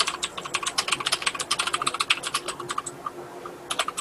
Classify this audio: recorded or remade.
recorded